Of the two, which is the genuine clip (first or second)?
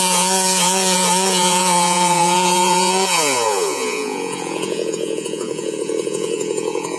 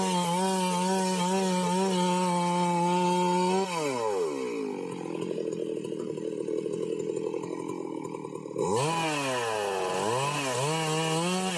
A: second